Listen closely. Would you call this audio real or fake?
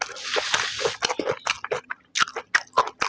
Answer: real